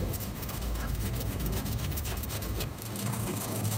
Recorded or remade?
remade